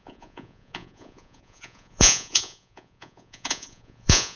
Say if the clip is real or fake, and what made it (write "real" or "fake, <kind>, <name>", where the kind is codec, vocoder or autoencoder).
fake, vocoder, Vocos